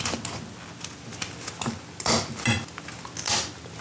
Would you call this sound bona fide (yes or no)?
yes